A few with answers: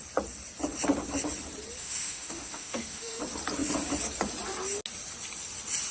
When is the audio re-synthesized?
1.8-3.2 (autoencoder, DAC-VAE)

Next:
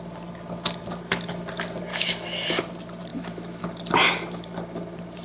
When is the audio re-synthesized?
1.9-2.5 (autoencoder, DAC-VAE); 3.1-3.6

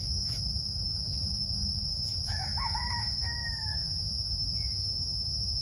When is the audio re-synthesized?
0.0-5.6 (autoencoder, DAC-VAE)

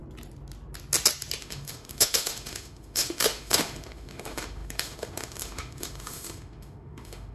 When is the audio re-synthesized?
1.4-7.3 (autoencoder, DAC-VAE)

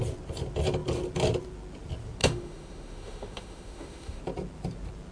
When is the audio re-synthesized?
2.2-4.2 (autoencoder, DAC-VAE)